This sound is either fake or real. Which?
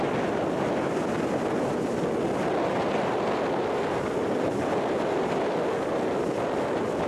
real